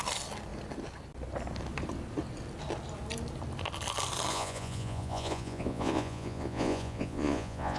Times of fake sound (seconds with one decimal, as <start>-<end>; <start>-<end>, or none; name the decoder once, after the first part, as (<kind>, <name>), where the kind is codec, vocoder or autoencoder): 4.3-7.8 (vocoder, Vocos)